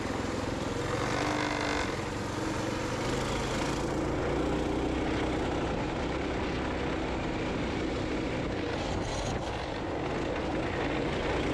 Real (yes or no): yes